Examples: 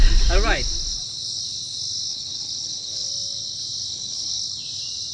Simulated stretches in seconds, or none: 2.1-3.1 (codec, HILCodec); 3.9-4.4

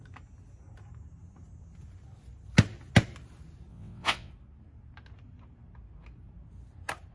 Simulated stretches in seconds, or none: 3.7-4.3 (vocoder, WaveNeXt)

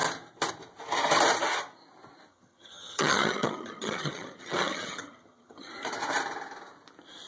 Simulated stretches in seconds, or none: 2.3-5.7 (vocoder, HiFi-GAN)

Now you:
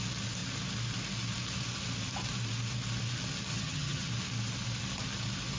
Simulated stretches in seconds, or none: 3.5-4.1 (vocoder, HiFi-GAN)

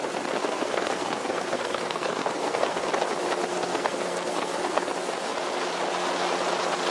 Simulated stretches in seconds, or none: 0.4-2.9 (codec, SNAC); 3.5-4.9